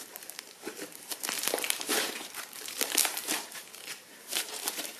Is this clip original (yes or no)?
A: no